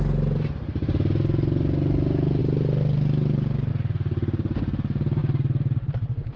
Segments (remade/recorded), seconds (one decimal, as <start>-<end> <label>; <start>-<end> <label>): 0.0-2.4 recorded; 2.4-3.7 remade; 3.7-5.2 recorded; 5.2-6.4 remade

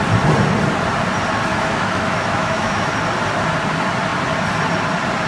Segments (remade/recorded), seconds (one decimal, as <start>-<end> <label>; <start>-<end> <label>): 0.0-1.5 recorded; 1.5-2.9 remade; 2.9-5.3 recorded

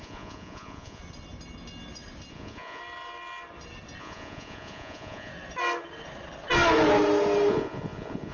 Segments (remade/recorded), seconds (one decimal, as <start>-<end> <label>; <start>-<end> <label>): 0.0-1.0 remade; 1.0-2.3 recorded; 2.3-2.8 remade; 2.8-4.0 recorded; 4.0-5.3 remade; 5.3-7.5 recorded; 7.5-8.3 remade